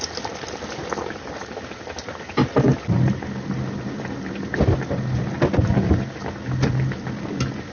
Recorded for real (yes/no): yes